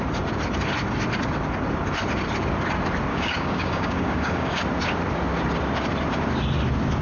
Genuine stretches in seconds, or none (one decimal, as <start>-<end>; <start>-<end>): 0.0-3.1; 4.6-7.0